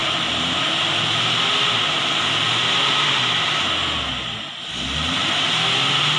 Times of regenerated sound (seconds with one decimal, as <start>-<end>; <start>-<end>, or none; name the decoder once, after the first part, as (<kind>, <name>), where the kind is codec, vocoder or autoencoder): none